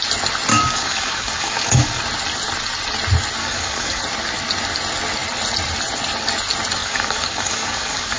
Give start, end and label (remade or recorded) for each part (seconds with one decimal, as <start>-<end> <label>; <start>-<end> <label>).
0.0-0.5 recorded; 0.5-2.0 remade; 2.0-3.4 recorded; 3.4-4.0 remade; 4.0-6.8 recorded; 6.8-8.2 remade